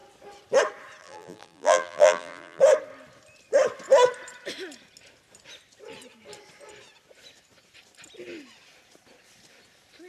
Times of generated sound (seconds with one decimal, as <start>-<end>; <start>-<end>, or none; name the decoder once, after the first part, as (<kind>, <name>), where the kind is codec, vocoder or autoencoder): 1.0-2.6 (vocoder, BigVGAN v2)